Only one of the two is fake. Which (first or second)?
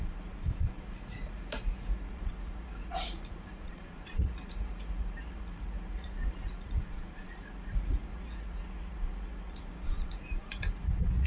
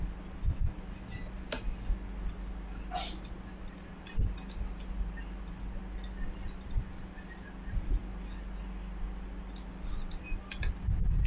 first